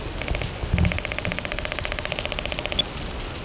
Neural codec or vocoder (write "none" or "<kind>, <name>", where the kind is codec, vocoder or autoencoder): none